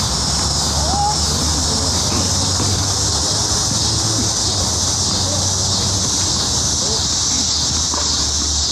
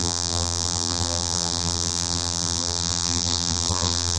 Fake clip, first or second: second